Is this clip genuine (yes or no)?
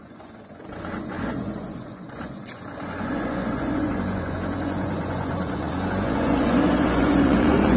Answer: no